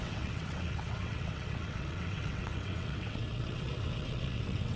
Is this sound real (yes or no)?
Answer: no